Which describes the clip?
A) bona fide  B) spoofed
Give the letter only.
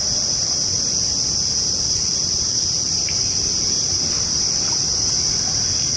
B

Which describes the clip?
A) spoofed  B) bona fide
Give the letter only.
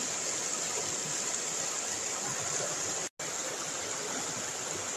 B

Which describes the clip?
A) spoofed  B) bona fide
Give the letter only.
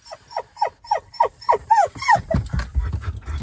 B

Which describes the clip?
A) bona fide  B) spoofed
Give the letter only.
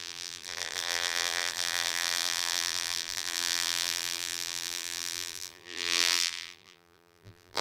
B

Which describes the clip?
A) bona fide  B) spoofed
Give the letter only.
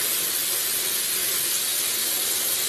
A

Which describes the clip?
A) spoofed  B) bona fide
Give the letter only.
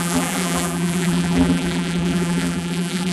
A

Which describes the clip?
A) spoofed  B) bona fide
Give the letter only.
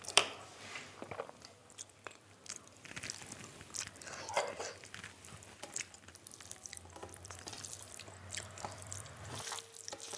A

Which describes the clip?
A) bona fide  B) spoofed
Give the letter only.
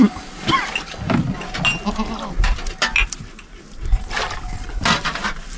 A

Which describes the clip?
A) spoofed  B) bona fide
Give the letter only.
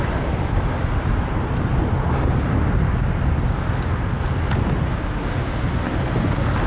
B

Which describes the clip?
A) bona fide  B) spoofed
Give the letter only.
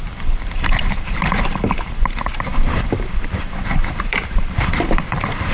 B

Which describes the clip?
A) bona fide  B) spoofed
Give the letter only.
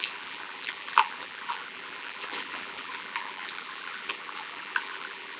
B